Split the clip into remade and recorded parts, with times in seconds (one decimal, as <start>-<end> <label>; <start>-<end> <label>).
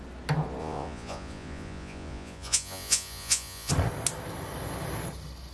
0.0-0.6 recorded; 0.6-3.7 remade; 3.7-5.5 recorded